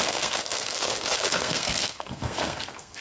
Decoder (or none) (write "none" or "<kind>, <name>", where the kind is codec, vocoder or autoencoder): codec, SNAC